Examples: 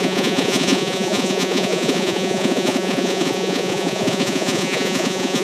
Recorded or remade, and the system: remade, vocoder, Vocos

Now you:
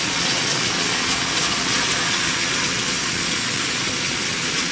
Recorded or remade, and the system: remade, vocoder, Vocos